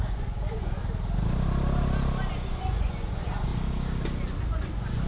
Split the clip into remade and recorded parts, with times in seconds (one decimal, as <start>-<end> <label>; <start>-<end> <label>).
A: 0.0-0.8 remade; 0.8-2.3 recorded; 2.3-3.5 remade; 3.5-4.5 recorded; 4.5-5.1 remade